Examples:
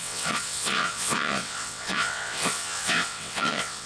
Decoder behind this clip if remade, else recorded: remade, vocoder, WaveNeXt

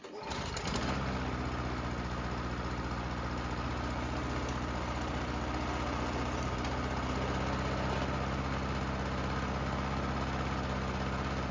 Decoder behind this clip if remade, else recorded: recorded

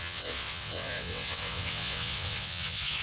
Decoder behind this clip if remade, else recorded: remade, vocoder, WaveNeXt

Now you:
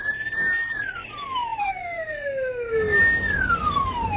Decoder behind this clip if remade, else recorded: recorded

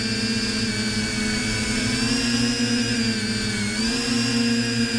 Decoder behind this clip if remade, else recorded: recorded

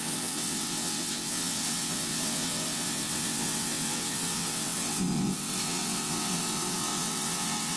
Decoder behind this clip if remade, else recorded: remade, vocoder, WaveNeXt